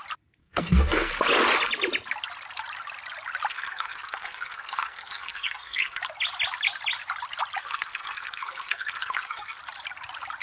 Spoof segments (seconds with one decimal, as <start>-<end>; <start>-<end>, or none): 0.4-1.1; 3.5-6.0; 7.6-9.6